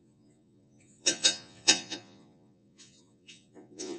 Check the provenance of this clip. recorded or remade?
remade